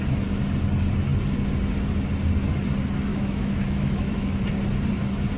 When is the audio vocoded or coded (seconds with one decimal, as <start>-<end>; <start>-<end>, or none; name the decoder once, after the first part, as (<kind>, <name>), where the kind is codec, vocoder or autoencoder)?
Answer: 3.1-4.4 (autoencoder, DAC-VAE)